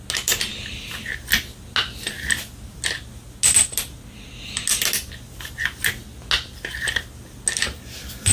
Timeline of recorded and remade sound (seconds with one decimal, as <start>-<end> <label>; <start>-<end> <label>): 0.0-8.3 recorded